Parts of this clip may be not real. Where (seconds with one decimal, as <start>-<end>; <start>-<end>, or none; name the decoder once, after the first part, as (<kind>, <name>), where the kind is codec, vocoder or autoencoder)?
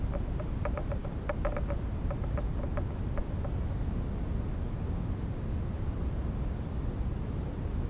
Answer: 1.0-1.6 (vocoder, BigVGAN v2)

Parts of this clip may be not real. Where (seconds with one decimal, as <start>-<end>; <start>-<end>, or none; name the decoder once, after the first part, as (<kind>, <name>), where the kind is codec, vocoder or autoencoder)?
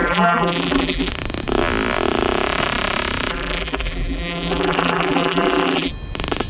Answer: 0.0-1.1 (vocoder, BigVGAN v2); 3.3-5.9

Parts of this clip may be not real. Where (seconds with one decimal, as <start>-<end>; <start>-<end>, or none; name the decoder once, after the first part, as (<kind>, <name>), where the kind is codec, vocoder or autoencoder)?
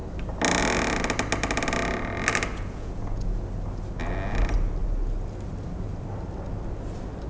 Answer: 2.5-3.4 (vocoder, Vocos)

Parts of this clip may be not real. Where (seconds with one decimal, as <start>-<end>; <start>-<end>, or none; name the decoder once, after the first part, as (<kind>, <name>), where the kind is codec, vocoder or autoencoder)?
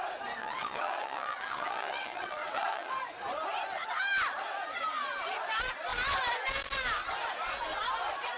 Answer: 0.4-2.9 (vocoder, WaveNeXt)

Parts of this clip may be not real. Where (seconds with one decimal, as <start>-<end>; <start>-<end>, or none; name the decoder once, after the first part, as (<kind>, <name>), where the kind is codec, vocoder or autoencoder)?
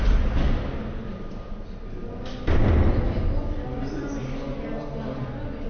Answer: none